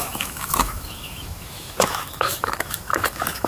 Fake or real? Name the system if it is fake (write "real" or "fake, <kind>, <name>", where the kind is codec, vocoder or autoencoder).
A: fake, autoencoder, DAC-VAE